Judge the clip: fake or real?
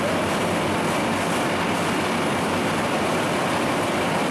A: fake